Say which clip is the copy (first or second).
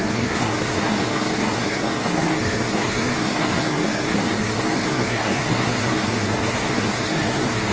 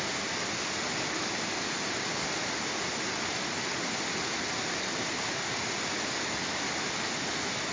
first